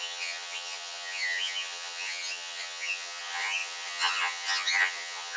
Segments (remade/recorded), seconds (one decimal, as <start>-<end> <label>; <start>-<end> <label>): 0.0-5.4 remade